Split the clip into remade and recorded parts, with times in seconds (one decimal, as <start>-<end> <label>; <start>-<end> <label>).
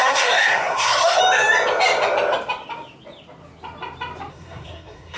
0.0-1.2 remade; 1.2-4.3 recorded; 4.3-5.2 remade